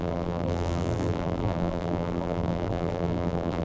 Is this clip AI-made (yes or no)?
yes